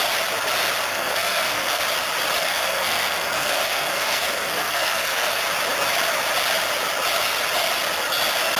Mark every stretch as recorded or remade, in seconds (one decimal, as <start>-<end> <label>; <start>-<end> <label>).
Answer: 0.0-0.9 recorded; 0.9-1.8 remade; 1.8-2.4 recorded; 2.4-5.4 remade; 5.4-8.6 recorded